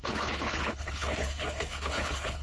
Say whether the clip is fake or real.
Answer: fake